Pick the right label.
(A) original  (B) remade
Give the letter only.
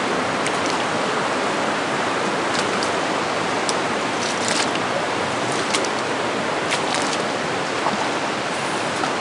A